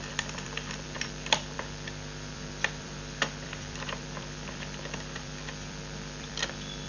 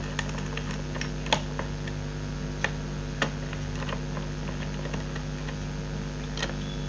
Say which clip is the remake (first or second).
first